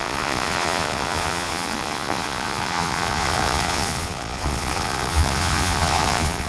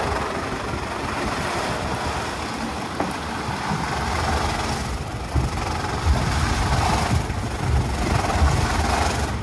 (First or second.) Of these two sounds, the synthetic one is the first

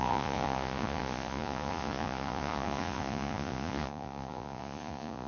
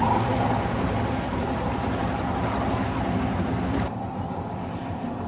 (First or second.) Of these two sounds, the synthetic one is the first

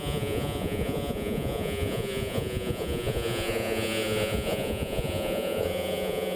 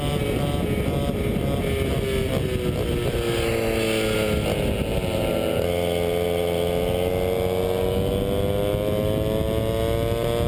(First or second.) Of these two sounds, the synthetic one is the first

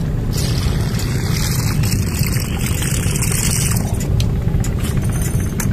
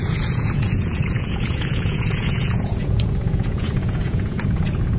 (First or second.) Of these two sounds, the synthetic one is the second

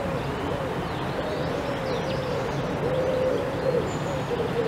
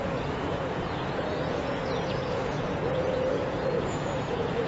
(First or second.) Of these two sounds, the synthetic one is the second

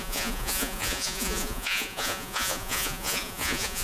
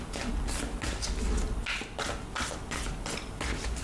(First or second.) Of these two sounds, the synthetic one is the first